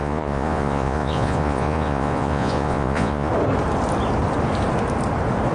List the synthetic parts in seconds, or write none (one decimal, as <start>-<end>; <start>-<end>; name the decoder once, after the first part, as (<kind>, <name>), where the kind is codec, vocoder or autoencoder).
0.0-3.3 (vocoder, Vocos)